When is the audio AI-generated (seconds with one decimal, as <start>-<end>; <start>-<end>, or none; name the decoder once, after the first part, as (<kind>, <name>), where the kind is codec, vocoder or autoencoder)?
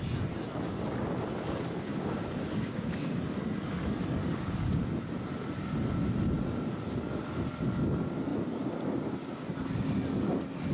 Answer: 1.9-3.2 (codec, DAC); 4.2-4.8